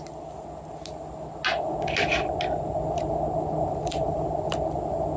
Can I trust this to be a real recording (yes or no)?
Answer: yes